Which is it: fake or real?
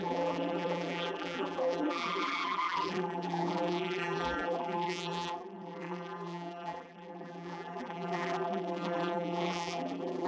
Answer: fake